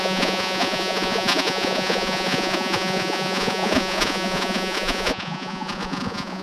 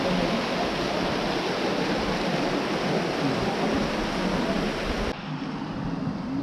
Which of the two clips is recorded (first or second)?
second